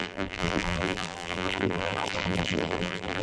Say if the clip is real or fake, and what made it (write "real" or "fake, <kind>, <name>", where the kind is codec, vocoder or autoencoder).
fake, vocoder, BigVGAN v2